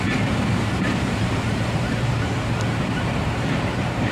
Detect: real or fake fake